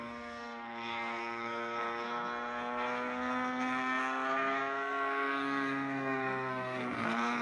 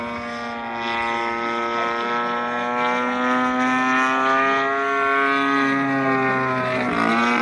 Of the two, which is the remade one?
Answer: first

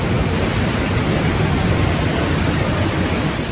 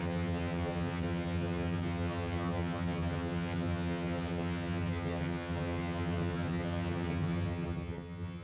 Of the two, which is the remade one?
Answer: second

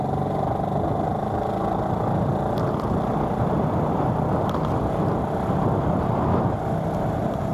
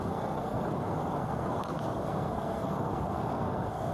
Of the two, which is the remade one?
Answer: second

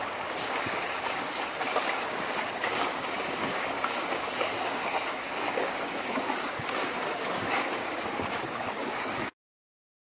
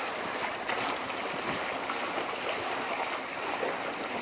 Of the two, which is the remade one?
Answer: first